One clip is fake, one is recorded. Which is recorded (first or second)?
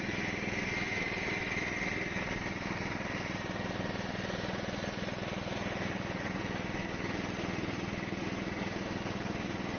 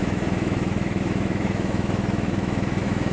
first